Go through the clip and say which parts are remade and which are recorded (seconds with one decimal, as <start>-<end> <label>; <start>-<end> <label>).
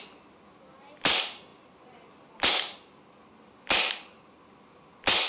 0.0-5.3 recorded